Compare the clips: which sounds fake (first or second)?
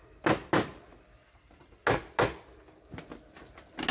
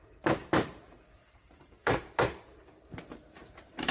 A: second